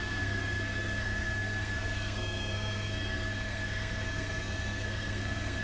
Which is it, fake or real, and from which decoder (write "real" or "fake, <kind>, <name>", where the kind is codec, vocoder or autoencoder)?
fake, codec, SNAC